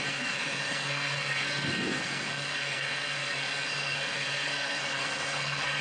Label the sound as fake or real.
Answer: fake